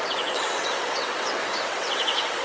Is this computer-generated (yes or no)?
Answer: yes